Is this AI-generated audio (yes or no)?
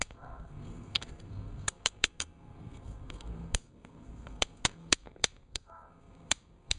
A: yes